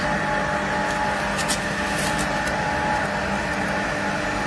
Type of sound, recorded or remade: recorded